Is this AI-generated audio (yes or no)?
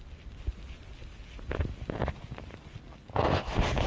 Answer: no